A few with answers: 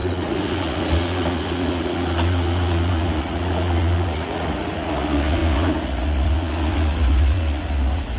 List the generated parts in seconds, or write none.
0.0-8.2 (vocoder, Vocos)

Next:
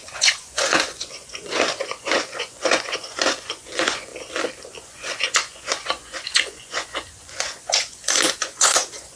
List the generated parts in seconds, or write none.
0.0-4.1 (vocoder, Vocos); 4.8-9.2

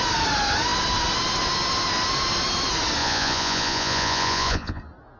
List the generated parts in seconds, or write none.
3.0-4.8 (vocoder, Vocos)

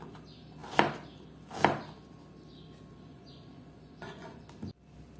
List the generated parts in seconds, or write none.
3.1-4.4 (vocoder, Vocos)